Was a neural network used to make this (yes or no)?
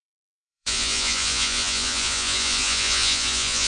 yes